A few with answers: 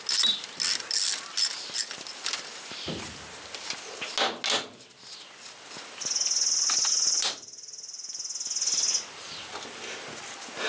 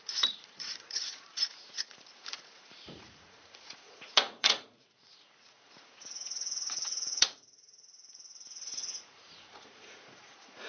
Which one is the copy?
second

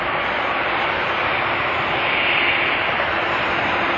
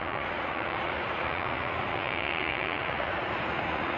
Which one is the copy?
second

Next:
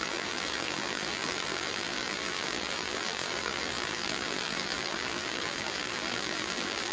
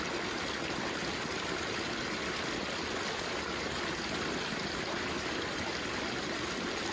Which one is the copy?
first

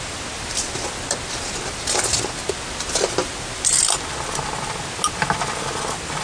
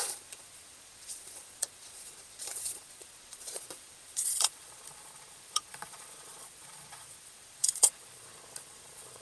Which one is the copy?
second